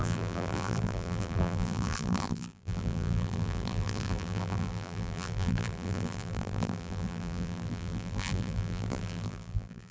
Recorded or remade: remade